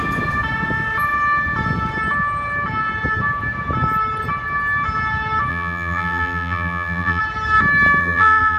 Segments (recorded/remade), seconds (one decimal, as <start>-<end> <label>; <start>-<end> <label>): 0.0-5.5 recorded; 5.5-7.2 remade; 7.2-8.0 recorded; 8.0-8.6 remade

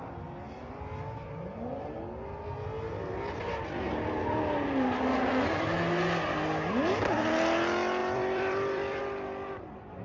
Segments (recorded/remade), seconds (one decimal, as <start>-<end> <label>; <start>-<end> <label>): 0.0-8.0 recorded; 8.0-9.0 remade; 9.0-10.0 recorded

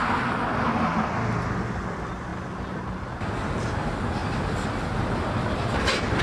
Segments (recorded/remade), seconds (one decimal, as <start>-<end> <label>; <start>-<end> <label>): 0.0-6.2 recorded

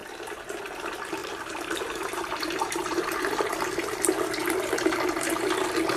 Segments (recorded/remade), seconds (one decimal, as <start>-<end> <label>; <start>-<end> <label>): 0.0-1.2 recorded; 1.2-3.5 remade; 3.5-6.0 recorded

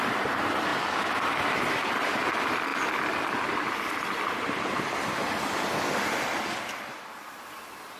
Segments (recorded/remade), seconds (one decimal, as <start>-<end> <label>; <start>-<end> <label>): 0.0-2.7 remade; 2.7-7.0 recorded; 7.0-8.0 remade

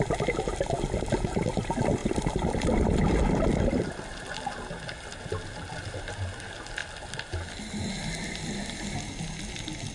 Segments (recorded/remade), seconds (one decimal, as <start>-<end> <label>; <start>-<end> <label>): 0.0-2.0 recorded; 2.0-4.2 remade; 4.2-9.9 recorded

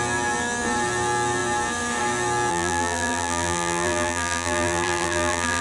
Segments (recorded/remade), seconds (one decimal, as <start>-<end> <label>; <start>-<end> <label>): 0.0-2.5 recorded; 2.5-5.6 remade

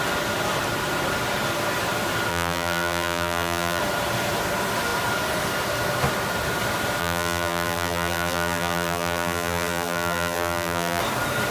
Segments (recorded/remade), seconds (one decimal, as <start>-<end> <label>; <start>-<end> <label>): 0.0-2.3 recorded; 2.3-3.8 remade; 3.8-7.0 recorded; 7.0-11.0 remade; 11.0-11.5 recorded